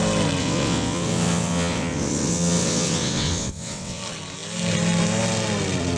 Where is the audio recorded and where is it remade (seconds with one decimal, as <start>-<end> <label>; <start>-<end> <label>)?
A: 0.0-0.4 recorded; 0.4-4.0 remade; 4.0-6.0 recorded